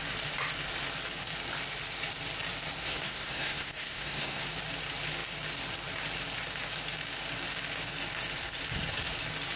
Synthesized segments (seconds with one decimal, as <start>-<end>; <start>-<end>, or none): 2.8-4.4